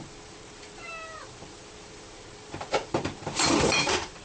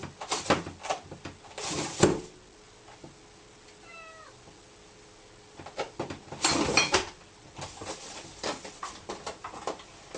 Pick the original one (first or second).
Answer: second